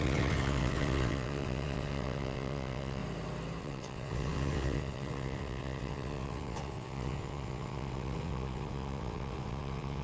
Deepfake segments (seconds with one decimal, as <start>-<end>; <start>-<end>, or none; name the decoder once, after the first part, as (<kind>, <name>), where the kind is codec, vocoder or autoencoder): 0.0-3.0 (vocoder, WaveNeXt); 3.6-10.0